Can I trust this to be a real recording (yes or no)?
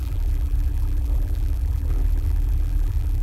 no